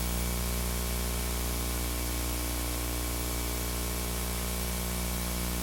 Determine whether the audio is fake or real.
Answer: real